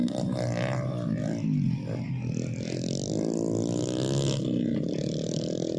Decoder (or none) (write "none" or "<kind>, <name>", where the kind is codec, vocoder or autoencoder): none